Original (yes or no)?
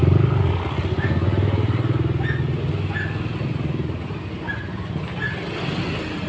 yes